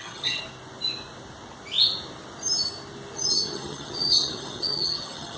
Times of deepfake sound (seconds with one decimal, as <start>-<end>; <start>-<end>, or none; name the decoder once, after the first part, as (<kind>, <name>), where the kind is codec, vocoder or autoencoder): 0.0-0.4 (vocoder, HiFi-GAN); 3.3-5.4